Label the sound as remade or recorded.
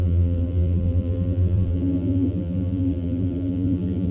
remade